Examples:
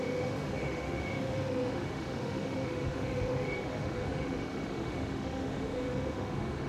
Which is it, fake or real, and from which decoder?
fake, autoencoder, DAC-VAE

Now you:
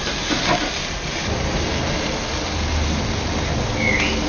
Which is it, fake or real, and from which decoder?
real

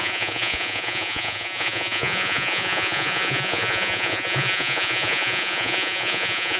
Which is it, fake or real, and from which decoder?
fake, vocoder, Vocos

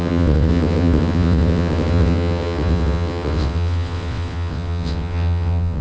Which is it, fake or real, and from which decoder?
fake, vocoder, WaveNeXt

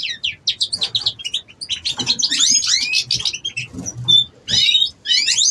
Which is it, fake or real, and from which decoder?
real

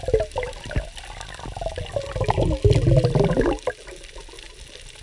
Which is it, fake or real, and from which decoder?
real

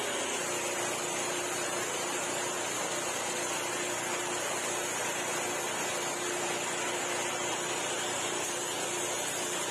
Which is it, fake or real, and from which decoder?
real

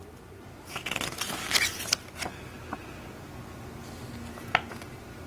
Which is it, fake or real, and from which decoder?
real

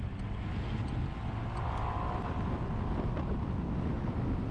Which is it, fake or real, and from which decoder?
real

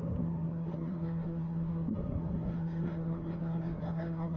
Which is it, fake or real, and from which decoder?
fake, codec, SNAC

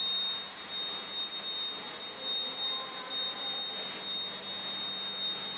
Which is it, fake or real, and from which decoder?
real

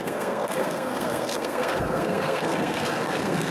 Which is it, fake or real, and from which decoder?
fake, codec, SNAC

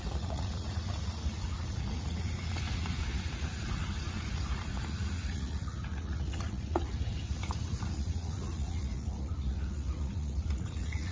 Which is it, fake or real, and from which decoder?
fake, vocoder, Vocos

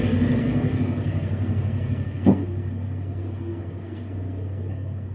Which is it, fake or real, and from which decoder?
fake, codec, SNAC